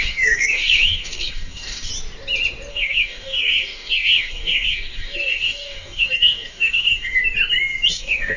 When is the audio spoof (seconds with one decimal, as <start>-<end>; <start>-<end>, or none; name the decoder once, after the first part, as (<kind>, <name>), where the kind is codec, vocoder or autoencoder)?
0.0-1.9 (codec, DAC); 2.7-7.2; 7.9-8.4